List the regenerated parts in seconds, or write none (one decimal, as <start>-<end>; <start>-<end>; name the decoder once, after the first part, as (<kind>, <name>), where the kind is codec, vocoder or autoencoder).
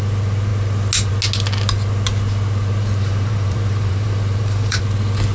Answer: 2.8-4.8 (vocoder, BigVGAN v2)